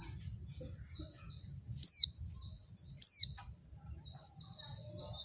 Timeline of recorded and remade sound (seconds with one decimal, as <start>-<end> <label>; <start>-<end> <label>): 0.0-5.2 recorded